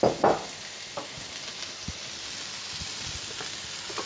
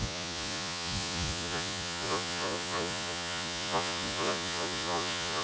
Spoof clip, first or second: second